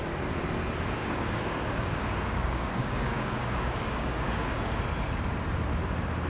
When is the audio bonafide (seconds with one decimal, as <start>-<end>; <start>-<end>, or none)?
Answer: 0.0-1.0; 4.8-6.3